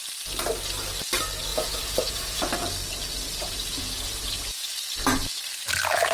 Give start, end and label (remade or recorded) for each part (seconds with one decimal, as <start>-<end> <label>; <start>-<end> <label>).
0.0-1.5 recorded; 1.5-2.5 remade; 2.5-3.4 recorded; 3.4-4.7 remade; 4.7-6.1 recorded